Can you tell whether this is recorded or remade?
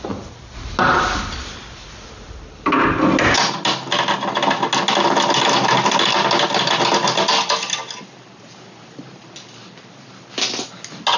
recorded